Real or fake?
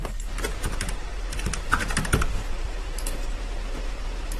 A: fake